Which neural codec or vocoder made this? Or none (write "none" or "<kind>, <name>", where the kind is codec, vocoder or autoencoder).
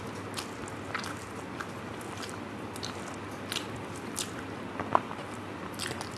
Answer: none